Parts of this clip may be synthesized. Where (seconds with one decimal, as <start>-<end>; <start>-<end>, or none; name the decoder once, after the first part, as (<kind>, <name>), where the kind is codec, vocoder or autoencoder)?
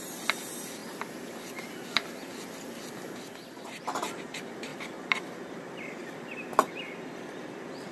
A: 0.8-3.0 (vocoder, BigVGAN v2); 4.7-6.7